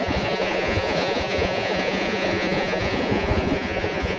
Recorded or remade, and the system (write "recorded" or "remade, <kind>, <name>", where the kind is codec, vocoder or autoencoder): remade, vocoder, Vocos